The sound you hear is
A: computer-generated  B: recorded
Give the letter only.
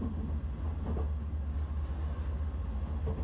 B